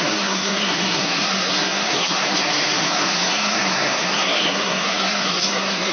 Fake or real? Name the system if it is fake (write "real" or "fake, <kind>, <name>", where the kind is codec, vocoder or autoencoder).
fake, codec, SNAC